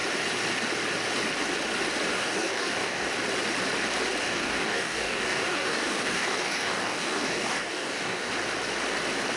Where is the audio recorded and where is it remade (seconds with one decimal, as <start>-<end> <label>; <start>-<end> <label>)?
0.0-2.1 recorded; 2.1-3.1 remade; 3.1-4.2 recorded; 4.2-8.3 remade; 8.3-9.4 recorded